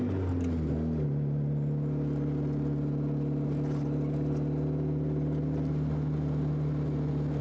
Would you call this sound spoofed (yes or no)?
no